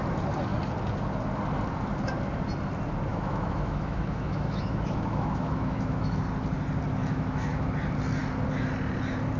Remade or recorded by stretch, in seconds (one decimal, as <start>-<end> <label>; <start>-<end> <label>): 0.0-3.1 recorded; 3.1-6.2 remade; 6.2-7.0 recorded; 7.0-7.7 remade; 7.7-9.4 recorded